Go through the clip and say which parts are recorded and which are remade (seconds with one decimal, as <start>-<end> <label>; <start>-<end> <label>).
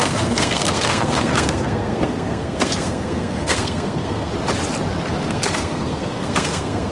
0.0-4.3 remade; 4.3-5.3 recorded; 5.3-6.9 remade